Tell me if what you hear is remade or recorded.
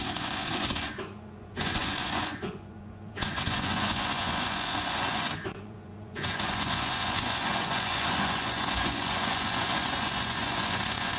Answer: remade